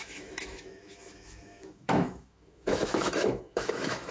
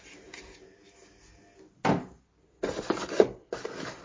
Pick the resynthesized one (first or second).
first